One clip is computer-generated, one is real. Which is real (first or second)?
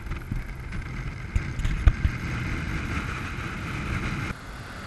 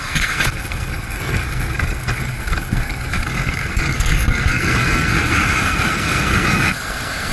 first